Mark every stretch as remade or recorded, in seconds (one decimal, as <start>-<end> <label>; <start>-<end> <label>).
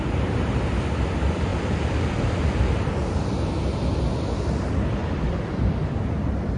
0.0-1.5 recorded; 1.5-4.4 remade; 4.4-5.0 recorded; 5.0-5.9 remade; 5.9-6.6 recorded